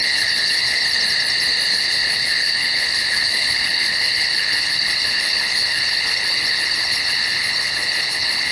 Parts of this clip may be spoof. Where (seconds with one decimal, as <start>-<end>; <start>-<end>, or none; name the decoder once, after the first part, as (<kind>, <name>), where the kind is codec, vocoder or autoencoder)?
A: 0.0-0.8 (codec, HILCodec); 1.7-8.5